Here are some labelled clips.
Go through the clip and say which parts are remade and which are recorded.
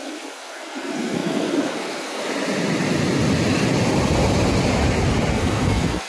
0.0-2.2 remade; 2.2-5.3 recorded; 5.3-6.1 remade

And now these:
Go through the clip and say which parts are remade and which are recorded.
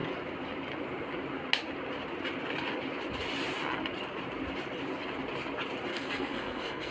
0.0-5.9 recorded; 5.9-6.9 remade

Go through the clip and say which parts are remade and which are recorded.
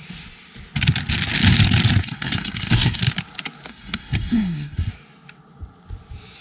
0.0-2.0 recorded; 2.0-3.0 remade; 3.0-3.7 recorded; 3.7-4.9 remade; 4.9-6.4 recorded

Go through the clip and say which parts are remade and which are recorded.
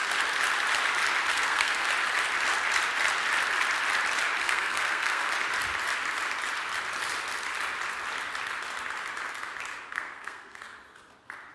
0.0-1.3 recorded; 1.3-1.9 remade; 1.9-4.4 recorded; 4.4-5.3 remade; 5.3-9.9 recorded; 9.9-10.6 remade; 10.6-11.5 recorded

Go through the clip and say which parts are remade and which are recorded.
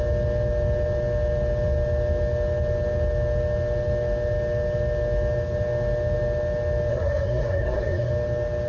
0.0-6.9 recorded; 6.9-8.1 remade; 8.1-8.7 recorded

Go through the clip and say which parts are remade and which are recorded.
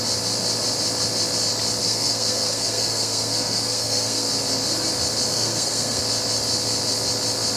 0.0-1.8 recorded; 1.8-4.3 remade; 4.3-5.3 recorded; 5.3-6.0 remade; 6.0-7.6 recorded